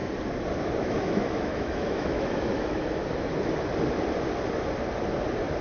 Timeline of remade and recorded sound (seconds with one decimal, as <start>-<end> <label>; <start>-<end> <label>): 0.0-0.7 recorded; 0.7-3.0 remade; 3.0-5.6 recorded